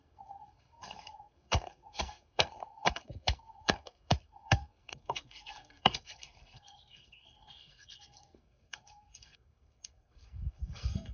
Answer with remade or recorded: remade